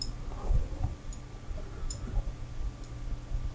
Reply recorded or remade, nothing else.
recorded